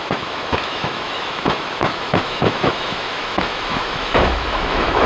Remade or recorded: remade